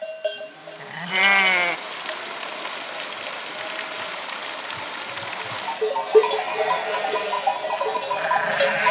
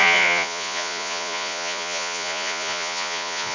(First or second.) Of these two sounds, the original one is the first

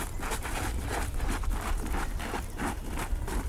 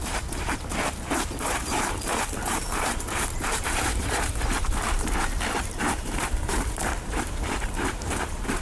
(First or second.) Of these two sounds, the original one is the first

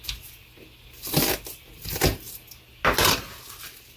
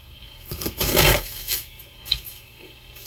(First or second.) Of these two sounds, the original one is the first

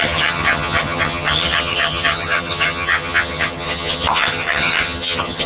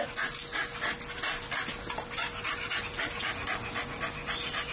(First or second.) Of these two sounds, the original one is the second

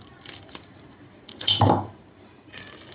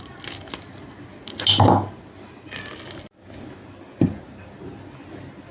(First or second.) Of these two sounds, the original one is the second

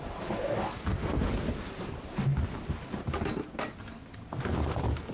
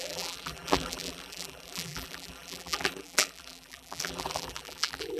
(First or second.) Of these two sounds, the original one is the first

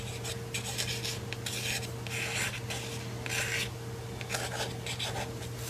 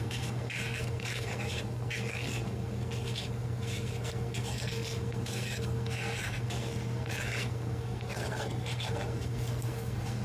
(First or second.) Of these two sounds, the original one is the first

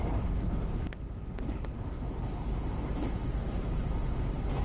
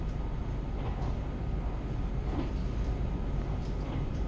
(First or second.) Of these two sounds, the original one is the second